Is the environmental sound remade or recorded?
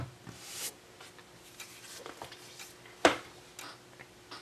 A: recorded